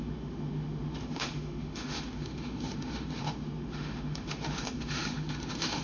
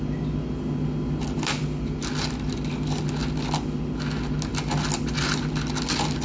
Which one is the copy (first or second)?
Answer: first